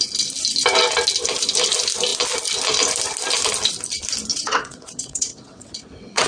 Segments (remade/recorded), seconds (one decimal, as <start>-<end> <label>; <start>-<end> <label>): 0.0-4.3 recorded; 4.3-6.3 remade